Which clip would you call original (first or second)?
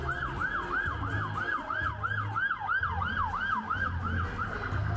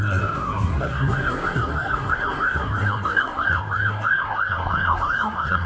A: first